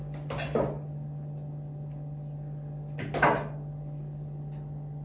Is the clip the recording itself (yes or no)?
yes